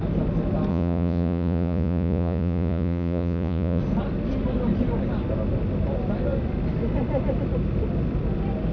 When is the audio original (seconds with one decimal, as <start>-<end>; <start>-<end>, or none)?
0.0-0.7; 3.8-8.7